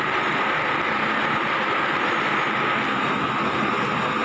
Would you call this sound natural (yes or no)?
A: yes